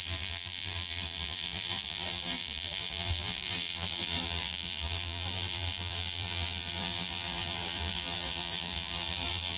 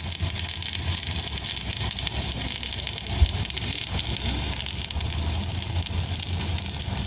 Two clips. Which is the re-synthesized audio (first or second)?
first